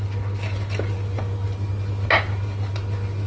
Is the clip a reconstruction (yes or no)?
no